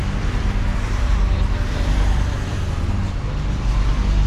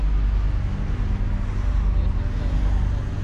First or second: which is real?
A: second